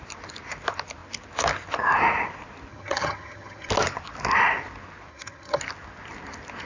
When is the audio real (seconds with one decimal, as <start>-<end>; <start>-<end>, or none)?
0.0-2.7; 3.7-5.1; 5.6-6.7